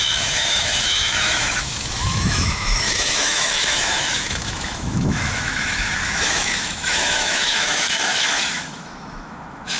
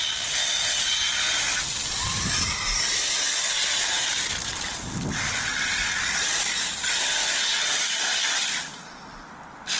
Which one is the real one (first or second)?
second